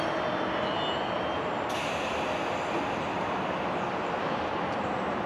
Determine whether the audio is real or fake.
real